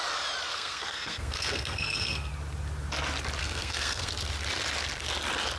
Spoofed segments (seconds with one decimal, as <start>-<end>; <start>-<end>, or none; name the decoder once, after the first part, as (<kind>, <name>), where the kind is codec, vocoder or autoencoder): 0.5-2.3 (codec, SNAC); 3.4-4.1